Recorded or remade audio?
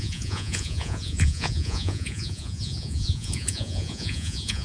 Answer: remade